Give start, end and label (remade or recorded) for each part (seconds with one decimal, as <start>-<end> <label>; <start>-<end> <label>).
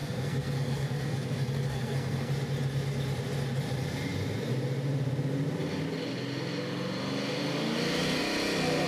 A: 0.0-2.3 remade; 2.3-8.9 recorded